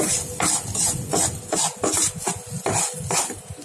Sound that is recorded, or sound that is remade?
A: recorded